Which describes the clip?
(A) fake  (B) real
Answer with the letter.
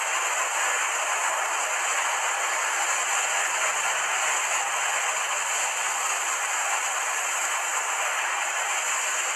B